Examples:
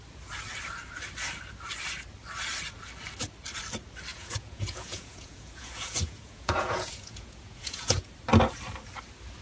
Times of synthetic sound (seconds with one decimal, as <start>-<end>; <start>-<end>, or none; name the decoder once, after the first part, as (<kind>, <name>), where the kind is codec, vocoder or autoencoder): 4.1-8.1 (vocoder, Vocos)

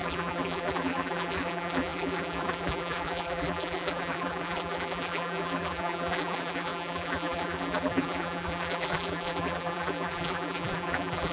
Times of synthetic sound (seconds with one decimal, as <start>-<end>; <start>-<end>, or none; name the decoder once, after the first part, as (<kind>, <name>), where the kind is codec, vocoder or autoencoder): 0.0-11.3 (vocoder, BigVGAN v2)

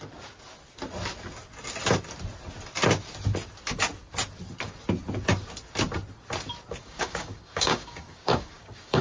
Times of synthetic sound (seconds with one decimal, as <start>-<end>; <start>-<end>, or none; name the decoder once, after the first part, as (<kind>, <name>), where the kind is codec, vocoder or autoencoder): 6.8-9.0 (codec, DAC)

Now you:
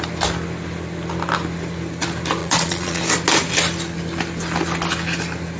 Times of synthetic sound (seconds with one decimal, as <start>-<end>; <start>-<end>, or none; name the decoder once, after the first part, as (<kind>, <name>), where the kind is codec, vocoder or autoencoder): 2.4-3.0 (vocoder, Vocos)

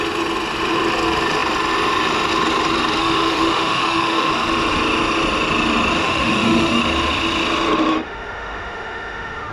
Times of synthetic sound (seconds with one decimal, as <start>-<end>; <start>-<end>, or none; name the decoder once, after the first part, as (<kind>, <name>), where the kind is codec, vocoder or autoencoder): 3.0-4.3 (autoencoder, DAC-VAE); 6.0-6.8; 7.9-9.5

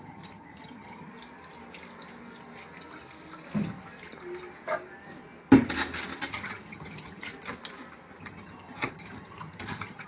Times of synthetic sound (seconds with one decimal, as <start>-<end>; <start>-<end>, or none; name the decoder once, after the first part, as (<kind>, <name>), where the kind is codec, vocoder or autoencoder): 0.0-1.1 (vocoder, HiFi-GAN); 6.3-7.3; 8.2-10.1

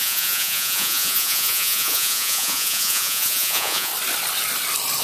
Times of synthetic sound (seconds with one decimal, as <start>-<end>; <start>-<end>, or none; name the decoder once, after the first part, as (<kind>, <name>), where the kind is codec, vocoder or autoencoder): 0.0-3.9 (vocoder, Vocos)